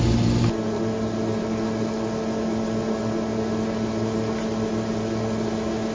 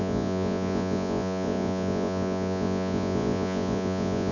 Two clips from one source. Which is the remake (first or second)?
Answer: second